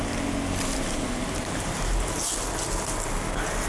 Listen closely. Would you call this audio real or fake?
real